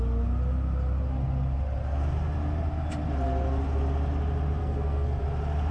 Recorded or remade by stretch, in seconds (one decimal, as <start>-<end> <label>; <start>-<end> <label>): 0.0-4.6 recorded; 4.6-5.2 remade; 5.2-5.7 recorded